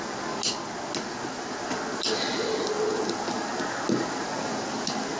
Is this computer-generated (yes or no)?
no